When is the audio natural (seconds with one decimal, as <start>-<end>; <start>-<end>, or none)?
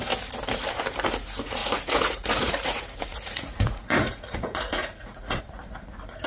0.0-1.6; 5.4-6.3